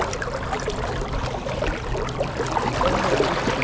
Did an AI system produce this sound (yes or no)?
no